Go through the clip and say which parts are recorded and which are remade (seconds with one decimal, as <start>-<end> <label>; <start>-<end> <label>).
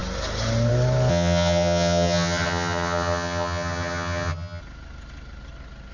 0.0-1.1 recorded; 1.1-4.6 remade; 4.6-5.9 recorded